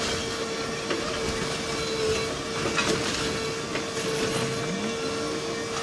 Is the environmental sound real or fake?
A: real